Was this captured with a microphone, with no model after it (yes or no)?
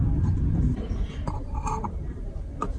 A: no